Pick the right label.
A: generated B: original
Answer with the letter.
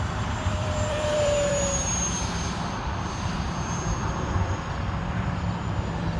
A